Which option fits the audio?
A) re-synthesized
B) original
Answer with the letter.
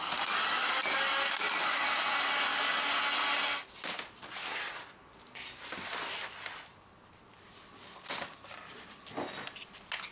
B